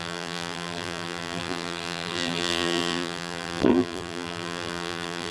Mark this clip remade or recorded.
remade